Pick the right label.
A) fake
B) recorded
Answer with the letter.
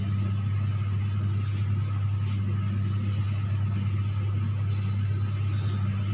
B